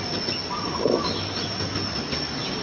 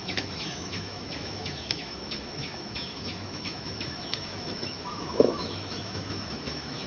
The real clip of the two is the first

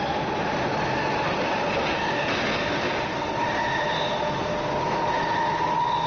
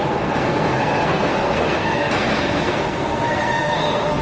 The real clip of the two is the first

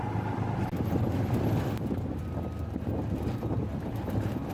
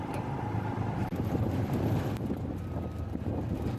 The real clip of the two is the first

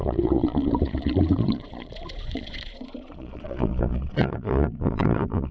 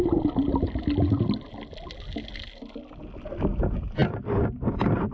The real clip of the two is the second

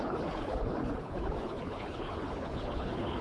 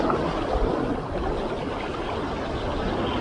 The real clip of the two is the second